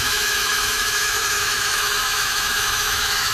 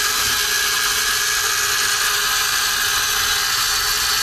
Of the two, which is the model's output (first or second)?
first